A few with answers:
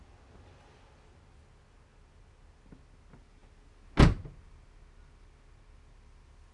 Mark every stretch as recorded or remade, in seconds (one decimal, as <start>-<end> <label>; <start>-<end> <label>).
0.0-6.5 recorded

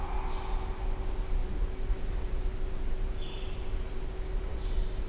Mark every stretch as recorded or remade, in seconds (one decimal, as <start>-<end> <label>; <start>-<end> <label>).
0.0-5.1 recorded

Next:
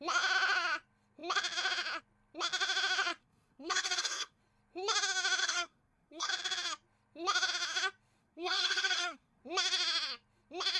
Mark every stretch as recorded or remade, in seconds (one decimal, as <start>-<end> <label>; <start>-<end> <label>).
0.0-3.2 recorded; 3.2-4.4 remade; 4.4-5.4 recorded; 5.4-6.3 remade; 6.3-8.2 recorded; 8.2-9.4 remade; 9.4-10.8 recorded